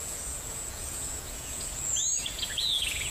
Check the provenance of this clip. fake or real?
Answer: fake